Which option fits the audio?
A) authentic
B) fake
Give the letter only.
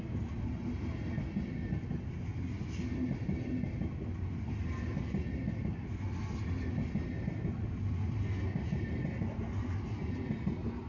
A